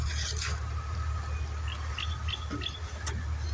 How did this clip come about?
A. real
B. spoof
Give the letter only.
A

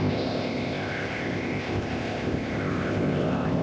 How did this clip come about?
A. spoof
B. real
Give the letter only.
A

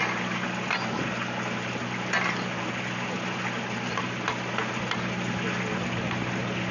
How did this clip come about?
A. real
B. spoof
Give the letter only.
A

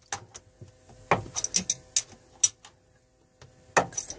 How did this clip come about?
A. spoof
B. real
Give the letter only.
B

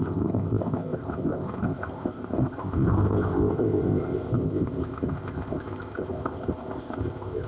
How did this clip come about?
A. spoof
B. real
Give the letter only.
A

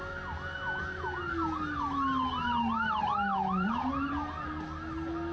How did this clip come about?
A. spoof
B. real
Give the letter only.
B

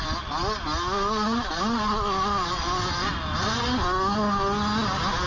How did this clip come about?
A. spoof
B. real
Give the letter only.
B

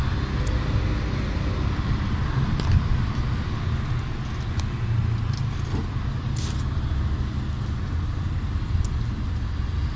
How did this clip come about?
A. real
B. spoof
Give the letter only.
A